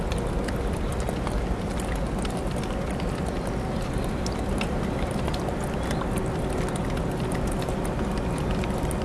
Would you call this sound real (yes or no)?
yes